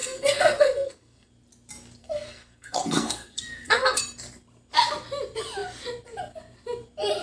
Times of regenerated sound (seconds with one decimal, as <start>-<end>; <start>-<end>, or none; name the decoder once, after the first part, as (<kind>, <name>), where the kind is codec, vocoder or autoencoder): 0.0-1.3 (codec, SNAC); 2.0-4.0